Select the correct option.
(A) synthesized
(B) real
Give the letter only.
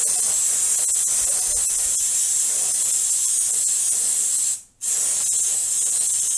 B